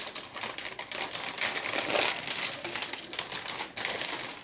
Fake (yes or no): no